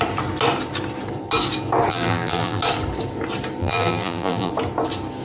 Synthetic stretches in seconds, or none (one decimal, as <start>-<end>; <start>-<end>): 1.9-2.6; 3.6-4.5